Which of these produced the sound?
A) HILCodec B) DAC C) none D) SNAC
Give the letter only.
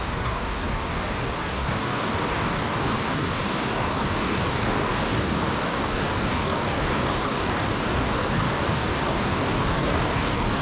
B